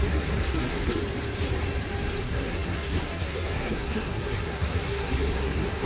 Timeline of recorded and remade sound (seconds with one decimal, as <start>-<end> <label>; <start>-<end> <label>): 0.0-1.0 remade; 1.0-2.2 recorded; 2.2-5.9 remade